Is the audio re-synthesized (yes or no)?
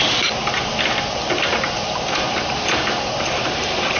yes